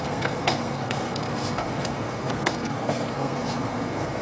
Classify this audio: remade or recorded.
remade